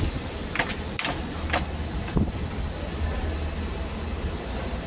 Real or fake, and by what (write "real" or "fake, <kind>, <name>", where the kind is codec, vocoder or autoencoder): real